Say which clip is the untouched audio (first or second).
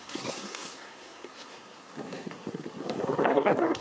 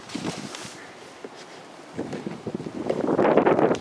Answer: second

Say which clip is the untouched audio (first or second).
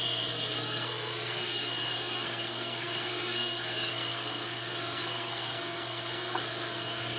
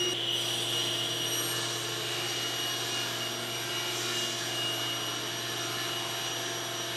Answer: second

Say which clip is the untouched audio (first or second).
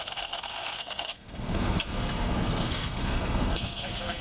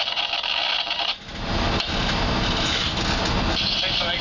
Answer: second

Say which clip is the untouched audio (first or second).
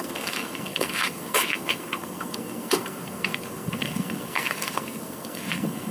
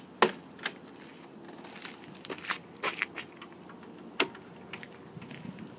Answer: second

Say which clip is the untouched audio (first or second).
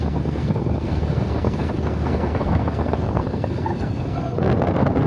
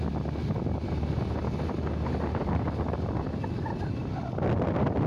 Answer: second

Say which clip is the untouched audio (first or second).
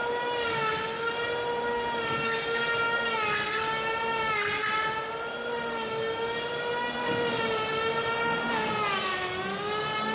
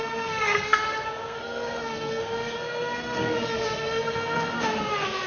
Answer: first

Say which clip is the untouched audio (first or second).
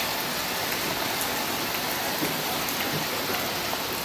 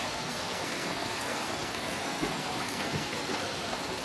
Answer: first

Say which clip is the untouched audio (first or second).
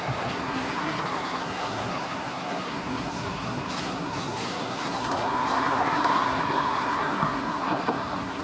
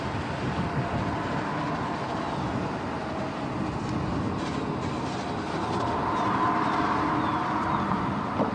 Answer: second